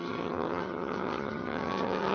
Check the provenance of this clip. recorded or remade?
remade